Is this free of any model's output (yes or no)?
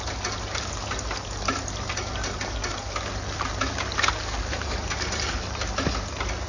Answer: yes